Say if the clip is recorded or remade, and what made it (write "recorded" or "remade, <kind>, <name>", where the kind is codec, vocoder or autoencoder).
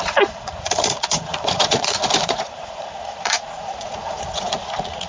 remade, vocoder, Vocos